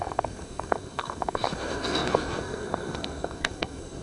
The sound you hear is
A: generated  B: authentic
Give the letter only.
A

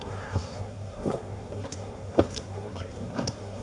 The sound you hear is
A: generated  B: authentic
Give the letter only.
A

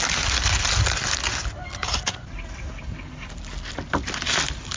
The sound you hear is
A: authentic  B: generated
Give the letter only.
A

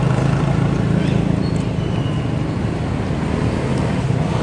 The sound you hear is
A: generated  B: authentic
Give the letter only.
B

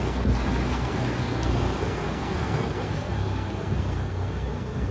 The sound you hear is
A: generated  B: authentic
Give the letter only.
A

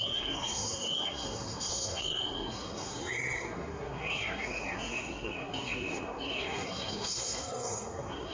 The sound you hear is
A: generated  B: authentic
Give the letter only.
A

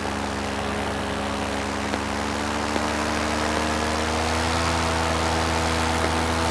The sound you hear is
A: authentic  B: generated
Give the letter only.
A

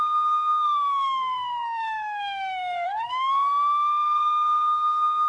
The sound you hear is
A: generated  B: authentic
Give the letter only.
A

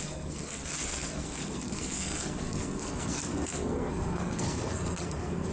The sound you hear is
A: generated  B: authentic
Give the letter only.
A